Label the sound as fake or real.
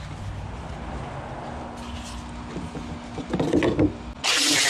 real